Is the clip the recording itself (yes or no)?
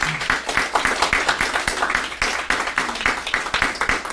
yes